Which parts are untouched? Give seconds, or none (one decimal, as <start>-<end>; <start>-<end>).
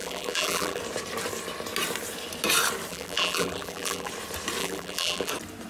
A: 0.8-2.9; 4.1-4.6; 5.3-5.7